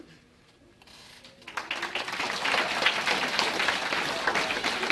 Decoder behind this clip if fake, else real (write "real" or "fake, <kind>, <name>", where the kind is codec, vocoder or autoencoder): real